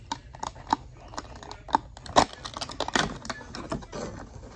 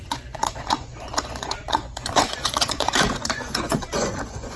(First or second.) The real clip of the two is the first